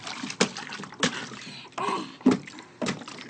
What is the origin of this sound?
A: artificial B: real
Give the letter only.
B